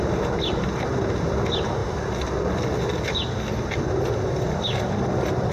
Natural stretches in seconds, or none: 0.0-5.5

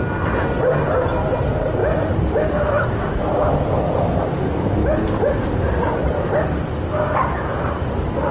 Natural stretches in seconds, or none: 0.0-8.3

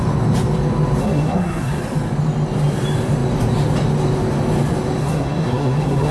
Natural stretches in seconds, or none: 0.0-1.0; 1.8-5.0